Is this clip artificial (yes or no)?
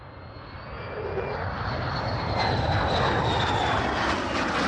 no